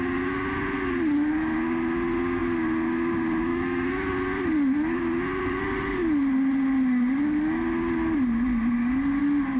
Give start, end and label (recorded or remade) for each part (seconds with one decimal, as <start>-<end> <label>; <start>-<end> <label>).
0.0-3.5 recorded; 3.5-4.1 remade; 4.1-9.6 recorded